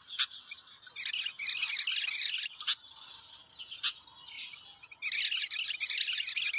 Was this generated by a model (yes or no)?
no